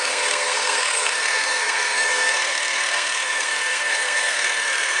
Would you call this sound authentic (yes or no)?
no